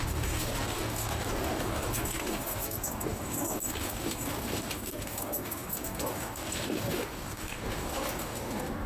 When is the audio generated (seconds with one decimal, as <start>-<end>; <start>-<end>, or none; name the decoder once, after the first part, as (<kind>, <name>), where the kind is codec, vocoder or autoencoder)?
0.0-8.9 (codec, DAC)

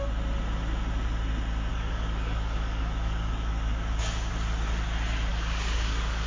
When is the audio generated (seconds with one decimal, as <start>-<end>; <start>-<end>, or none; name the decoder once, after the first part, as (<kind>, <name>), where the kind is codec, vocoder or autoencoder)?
1.7-4.3 (codec, DAC); 5.3-6.3

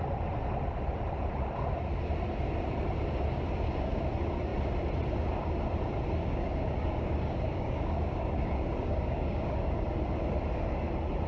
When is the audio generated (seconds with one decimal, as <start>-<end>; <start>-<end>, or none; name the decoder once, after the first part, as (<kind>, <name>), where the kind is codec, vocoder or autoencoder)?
3.3-4.0 (codec, DAC); 6.2-9.9

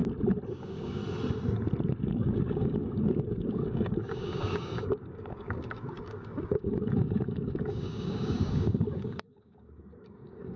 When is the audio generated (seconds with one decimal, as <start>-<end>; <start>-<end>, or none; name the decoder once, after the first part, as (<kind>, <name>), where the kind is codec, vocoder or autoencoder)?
0.5-1.0 (codec, DAC); 2.0-10.6

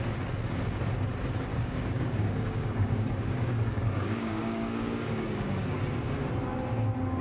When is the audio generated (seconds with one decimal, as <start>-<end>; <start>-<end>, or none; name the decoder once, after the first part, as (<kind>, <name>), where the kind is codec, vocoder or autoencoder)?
1.5-5.8 (codec, DAC)

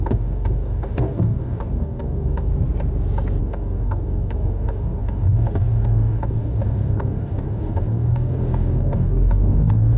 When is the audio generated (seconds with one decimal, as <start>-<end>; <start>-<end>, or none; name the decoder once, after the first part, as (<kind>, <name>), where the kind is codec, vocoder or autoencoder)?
0.0-2.5 (codec, DAC); 3.4-10.0

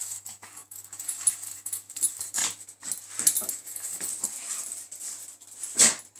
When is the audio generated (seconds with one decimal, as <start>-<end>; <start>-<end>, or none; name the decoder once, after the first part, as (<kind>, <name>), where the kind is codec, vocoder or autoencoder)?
0.0-2.4 (codec, DAC); 3.5-4.1